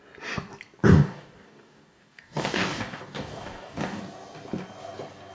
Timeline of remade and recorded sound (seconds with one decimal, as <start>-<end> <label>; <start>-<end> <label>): 0.0-0.8 recorded; 0.8-4.0 remade; 4.0-5.3 recorded